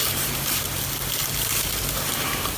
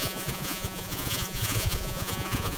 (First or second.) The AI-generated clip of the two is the second